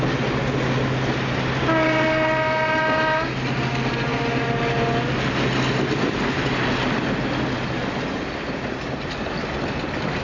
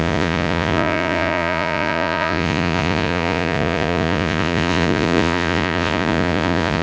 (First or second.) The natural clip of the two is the first